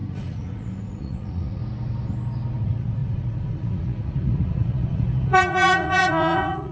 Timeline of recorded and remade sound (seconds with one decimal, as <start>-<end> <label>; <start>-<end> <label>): 0.0-1.6 remade; 1.6-2.6 recorded; 2.6-6.7 remade